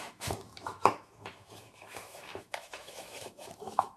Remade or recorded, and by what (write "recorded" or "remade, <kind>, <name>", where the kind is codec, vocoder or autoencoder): remade, autoencoder, DAC-VAE